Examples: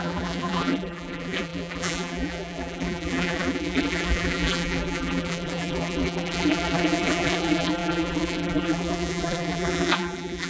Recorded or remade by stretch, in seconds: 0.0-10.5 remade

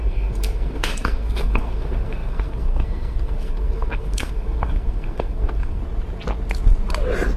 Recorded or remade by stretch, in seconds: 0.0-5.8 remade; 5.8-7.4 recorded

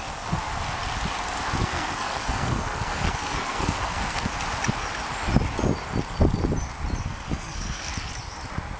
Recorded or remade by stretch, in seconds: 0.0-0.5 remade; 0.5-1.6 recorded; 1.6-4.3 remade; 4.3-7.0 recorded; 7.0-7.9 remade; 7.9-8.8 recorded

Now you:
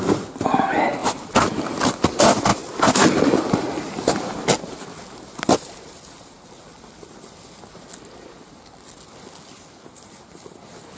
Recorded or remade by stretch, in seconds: 0.0-11.0 recorded